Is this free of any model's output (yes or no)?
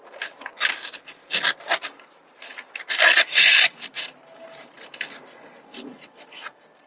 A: yes